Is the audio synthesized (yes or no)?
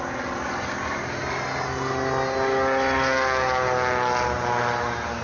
no